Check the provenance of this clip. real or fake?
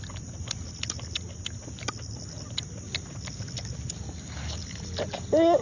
real